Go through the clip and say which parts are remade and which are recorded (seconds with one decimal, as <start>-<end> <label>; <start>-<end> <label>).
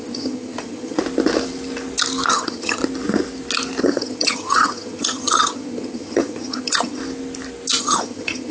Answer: 0.0-1.0 remade; 1.0-2.3 recorded; 2.3-2.8 remade; 2.8-3.8 recorded; 3.8-7.0 remade; 7.0-7.8 recorded; 7.8-8.5 remade